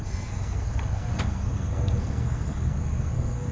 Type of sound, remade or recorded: remade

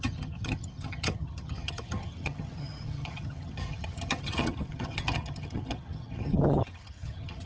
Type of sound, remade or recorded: remade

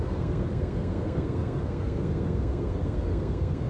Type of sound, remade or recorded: remade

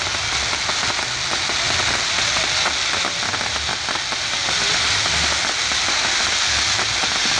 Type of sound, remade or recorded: recorded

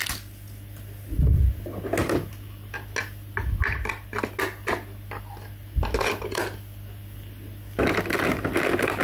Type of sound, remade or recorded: recorded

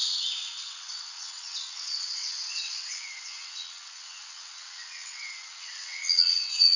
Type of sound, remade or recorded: remade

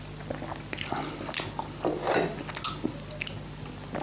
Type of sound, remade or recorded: recorded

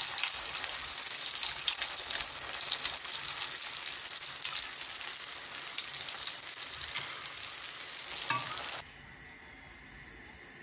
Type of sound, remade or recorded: recorded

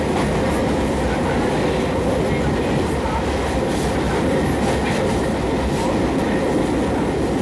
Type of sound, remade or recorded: recorded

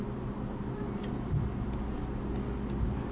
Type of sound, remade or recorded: recorded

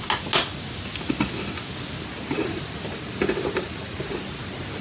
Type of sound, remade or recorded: recorded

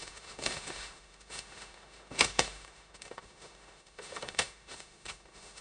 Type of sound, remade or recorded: remade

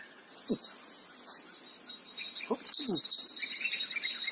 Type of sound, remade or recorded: recorded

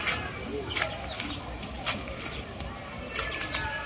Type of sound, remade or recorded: recorded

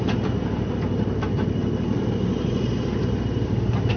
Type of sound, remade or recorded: recorded